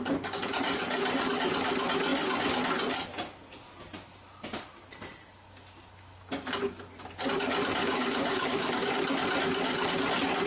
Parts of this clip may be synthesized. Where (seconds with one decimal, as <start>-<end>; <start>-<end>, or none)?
7.8-8.9